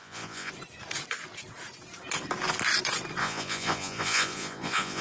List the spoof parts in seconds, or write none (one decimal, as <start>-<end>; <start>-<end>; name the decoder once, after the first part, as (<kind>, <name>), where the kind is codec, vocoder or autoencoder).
0.0-0.5 (vocoder, Vocos); 3.2-5.0